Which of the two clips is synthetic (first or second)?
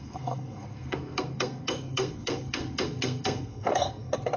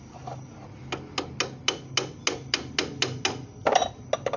first